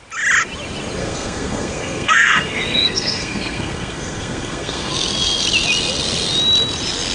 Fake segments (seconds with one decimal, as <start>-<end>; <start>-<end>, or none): 1.0-4.9